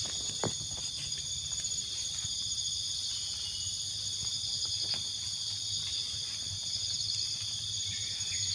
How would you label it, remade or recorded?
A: recorded